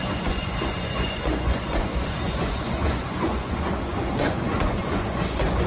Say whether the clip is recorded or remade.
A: remade